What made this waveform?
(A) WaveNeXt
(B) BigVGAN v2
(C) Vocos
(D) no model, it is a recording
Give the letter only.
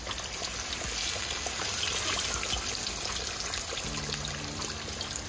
D